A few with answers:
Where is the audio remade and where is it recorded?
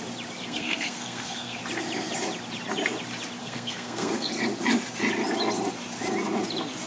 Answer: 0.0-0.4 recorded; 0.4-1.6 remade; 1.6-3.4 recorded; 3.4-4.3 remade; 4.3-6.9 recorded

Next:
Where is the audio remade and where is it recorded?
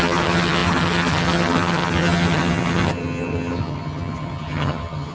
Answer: 0.0-5.1 remade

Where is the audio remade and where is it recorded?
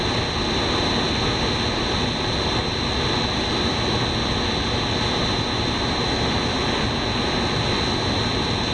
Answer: 0.0-8.7 recorded